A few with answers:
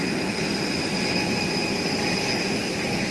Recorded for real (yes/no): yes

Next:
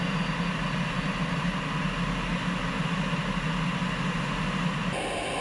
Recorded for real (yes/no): yes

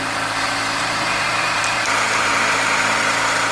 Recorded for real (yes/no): no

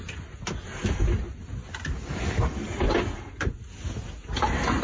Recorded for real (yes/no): yes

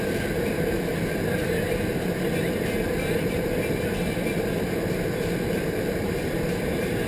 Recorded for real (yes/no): no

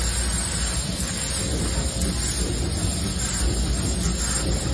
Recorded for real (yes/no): yes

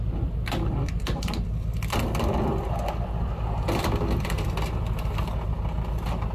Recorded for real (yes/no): yes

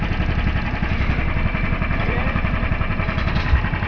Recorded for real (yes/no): no